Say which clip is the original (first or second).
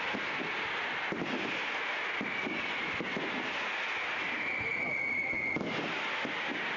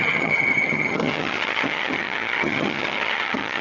first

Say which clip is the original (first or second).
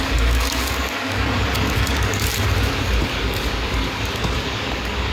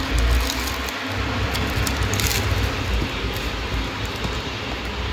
second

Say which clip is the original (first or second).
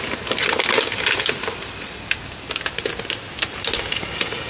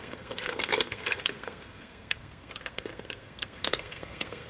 first